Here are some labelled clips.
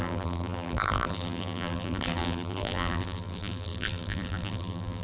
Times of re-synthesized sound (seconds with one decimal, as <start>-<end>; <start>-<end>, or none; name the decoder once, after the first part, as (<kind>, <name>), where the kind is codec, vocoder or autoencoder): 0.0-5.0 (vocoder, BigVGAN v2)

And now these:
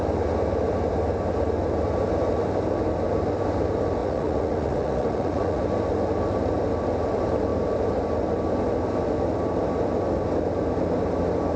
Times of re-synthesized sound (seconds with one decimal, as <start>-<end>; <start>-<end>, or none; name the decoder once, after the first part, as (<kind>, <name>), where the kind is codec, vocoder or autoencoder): 4.0-5.6 (vocoder, Vocos)

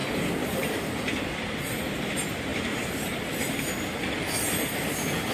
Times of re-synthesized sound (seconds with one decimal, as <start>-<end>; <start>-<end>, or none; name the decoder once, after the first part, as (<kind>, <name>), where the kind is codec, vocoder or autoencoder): none